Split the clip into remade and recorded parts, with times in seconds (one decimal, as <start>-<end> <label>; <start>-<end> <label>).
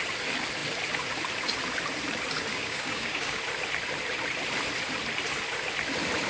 0.0-2.5 recorded; 2.5-3.4 remade; 3.4-6.3 recorded